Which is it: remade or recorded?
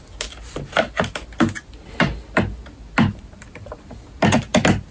recorded